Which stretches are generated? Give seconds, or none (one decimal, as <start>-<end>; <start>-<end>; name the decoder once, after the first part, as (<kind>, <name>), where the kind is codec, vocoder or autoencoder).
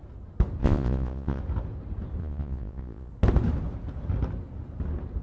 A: 0.6-1.4 (vocoder, Vocos); 2.2-3.1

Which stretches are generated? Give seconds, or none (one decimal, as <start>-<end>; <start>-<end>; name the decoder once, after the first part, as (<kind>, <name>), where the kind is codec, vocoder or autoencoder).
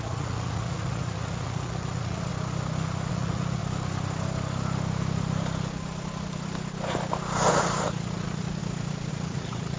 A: 0.0-2.3 (vocoder, Vocos); 3.1-3.6; 7.5-8.6; 9.1-9.8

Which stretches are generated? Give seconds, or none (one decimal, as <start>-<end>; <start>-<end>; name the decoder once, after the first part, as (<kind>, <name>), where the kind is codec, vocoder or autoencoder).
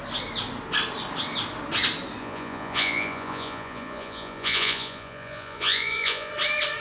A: 2.2-6.3 (vocoder, Vocos)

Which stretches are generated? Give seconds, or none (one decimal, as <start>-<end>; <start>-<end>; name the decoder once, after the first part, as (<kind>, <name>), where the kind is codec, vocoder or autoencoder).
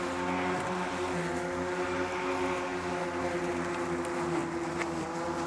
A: none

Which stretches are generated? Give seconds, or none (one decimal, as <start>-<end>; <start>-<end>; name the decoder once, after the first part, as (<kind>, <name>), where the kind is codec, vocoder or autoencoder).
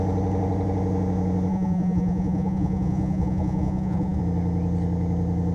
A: 1.5-4.2 (vocoder, Vocos)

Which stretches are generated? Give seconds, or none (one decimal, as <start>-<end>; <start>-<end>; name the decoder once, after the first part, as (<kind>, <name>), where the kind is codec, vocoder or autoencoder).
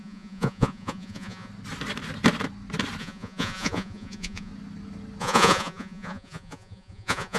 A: 0.0-1.5 (vocoder, Vocos); 3.0-4.5; 5.2-7.4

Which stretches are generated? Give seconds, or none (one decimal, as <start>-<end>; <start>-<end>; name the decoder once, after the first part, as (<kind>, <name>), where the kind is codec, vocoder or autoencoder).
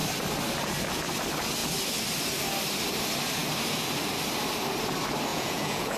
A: 5.3-6.0 (vocoder, Vocos)